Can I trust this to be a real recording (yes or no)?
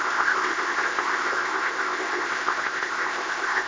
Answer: no